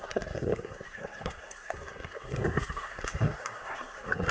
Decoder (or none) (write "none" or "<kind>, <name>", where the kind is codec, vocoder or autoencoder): codec, SNAC